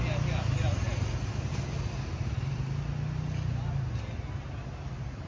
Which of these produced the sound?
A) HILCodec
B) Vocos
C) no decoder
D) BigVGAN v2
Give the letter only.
C